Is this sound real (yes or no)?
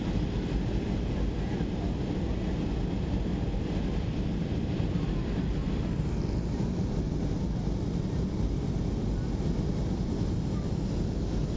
yes